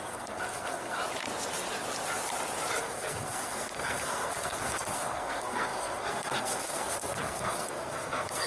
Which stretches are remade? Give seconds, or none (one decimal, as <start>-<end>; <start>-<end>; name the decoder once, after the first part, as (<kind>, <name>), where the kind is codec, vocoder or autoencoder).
0.0-1.0 (codec, SNAC); 2.8-8.5